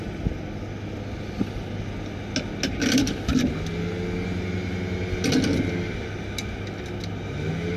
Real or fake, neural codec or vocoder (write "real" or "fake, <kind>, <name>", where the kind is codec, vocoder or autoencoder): real